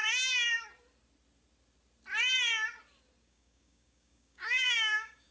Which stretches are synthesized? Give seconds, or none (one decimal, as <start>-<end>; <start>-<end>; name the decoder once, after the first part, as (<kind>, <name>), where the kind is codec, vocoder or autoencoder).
3.2-5.3 (codec, DAC)